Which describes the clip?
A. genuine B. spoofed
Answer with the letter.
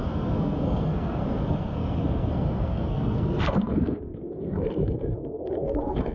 B